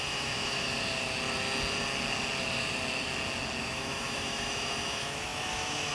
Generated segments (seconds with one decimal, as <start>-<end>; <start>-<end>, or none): 0.0-0.7; 3.6-5.9